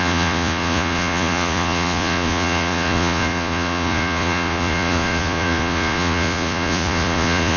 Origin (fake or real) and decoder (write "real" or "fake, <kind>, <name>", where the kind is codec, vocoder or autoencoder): fake, vocoder, Vocos